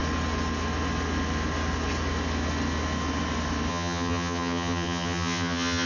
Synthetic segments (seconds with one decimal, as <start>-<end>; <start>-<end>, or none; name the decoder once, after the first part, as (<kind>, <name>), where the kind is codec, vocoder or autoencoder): 3.7-5.9 (vocoder, HiFi-GAN)